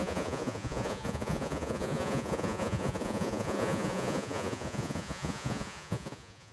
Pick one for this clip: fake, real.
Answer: fake